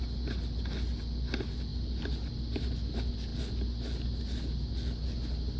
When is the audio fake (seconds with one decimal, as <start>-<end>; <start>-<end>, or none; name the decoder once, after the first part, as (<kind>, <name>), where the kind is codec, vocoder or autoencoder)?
1.7-2.7 (vocoder, BigVGAN v2)